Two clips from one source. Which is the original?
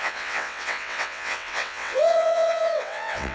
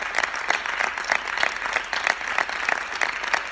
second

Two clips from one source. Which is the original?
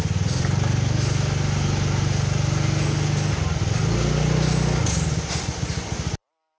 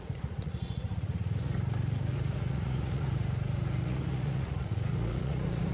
first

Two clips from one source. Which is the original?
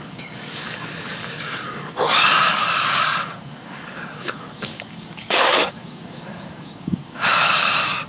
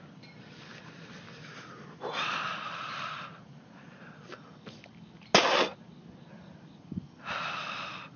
second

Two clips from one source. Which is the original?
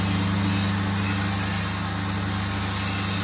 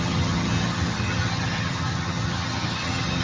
first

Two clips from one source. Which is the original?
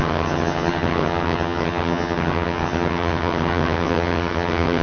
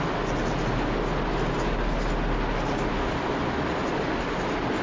second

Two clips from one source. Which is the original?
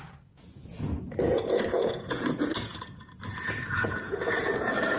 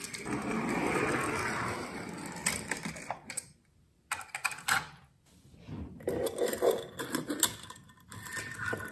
second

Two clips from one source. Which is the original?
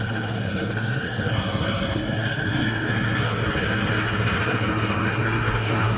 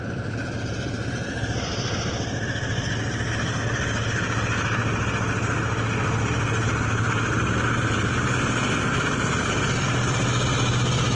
second